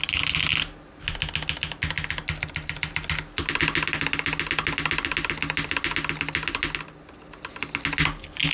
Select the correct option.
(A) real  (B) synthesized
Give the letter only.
A